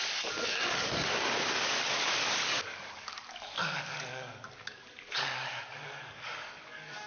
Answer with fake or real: fake